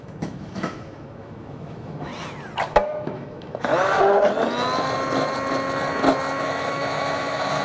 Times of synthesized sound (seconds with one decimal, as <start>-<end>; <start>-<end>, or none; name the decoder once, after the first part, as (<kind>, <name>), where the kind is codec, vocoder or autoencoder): 0.0-2.1 (autoencoder, DAC-VAE); 2.7-3.7; 6.4-7.6

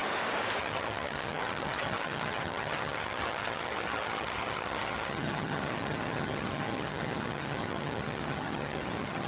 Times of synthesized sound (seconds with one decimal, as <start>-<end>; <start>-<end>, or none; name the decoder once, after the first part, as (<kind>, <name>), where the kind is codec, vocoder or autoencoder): 0.6-9.3 (vocoder, HiFi-GAN)

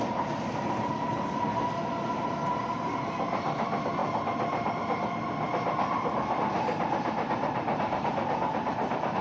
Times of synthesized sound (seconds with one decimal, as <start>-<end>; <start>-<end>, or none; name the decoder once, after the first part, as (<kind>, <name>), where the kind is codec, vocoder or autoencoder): none

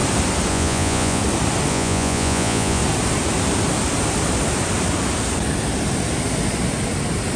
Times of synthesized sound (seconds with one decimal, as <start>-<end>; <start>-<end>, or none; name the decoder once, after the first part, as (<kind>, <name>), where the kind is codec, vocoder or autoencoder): 0.5-1.2 (vocoder, Vocos); 1.7-2.8

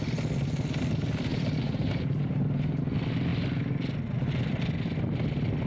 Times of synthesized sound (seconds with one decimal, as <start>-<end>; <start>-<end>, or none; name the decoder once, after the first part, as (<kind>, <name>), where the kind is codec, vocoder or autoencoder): 1.3-2.8 (vocoder, BigVGAN v2)

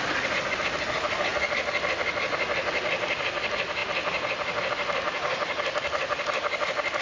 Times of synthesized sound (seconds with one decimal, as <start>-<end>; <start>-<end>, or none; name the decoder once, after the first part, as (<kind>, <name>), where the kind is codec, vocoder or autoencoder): none

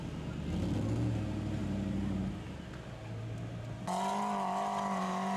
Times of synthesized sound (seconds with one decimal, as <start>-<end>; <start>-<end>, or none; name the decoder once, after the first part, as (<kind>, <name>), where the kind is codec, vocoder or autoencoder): 1.6-2.3 (vocoder, BigVGAN v2)